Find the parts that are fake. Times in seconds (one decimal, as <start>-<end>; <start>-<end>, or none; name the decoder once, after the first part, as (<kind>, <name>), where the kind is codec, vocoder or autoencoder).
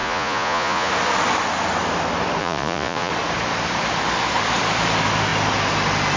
0.0-0.9 (vocoder, Vocos); 2.4-3.1